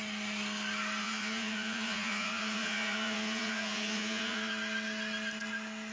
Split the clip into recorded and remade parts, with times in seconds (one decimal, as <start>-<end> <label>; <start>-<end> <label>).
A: 0.0-1.0 recorded; 1.0-4.5 remade; 4.5-5.9 recorded